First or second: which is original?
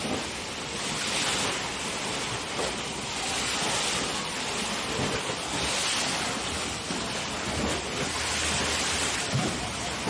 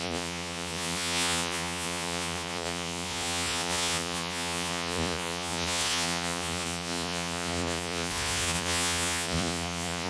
first